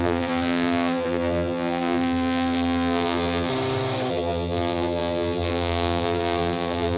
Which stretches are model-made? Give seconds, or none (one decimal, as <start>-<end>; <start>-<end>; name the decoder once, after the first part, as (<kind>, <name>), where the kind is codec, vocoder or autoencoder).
0.0-3.5 (vocoder, BigVGAN v2); 4.1-7.0